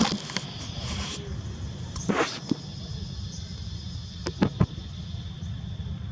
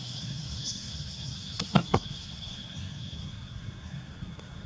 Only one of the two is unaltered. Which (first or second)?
first